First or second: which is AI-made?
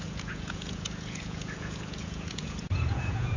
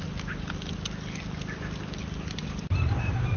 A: first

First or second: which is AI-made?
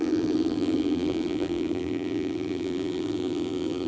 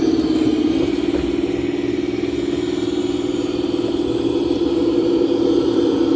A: first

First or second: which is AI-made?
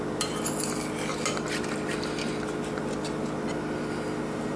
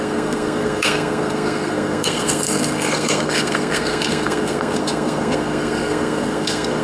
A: second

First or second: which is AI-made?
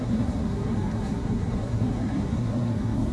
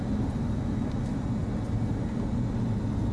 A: first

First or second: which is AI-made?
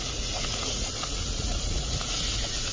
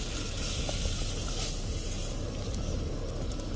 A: first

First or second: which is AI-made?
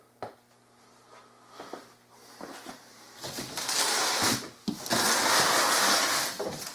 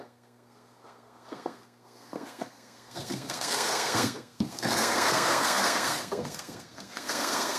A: second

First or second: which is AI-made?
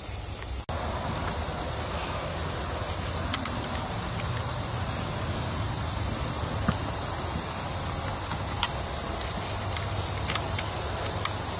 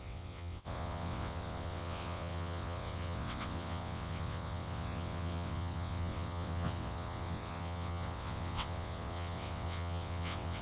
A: second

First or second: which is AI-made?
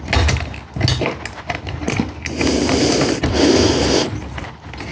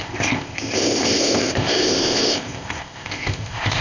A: second